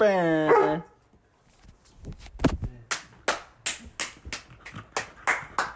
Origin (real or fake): real